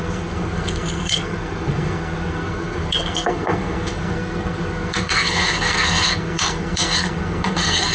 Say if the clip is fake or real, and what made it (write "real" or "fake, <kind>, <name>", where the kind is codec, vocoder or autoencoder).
fake, codec, SNAC